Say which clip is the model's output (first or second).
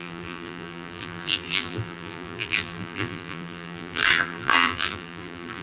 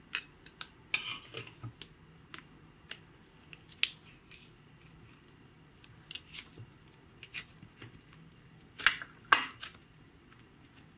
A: first